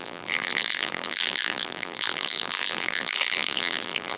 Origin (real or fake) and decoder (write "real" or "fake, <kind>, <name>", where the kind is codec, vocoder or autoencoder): fake, vocoder, BigVGAN v2